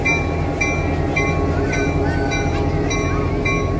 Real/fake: real